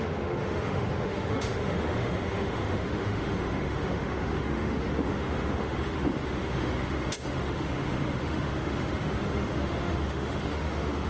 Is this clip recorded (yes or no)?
no